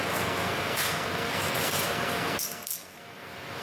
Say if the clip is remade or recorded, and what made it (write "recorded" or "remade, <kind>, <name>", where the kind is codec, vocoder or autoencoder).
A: remade, codec, SNAC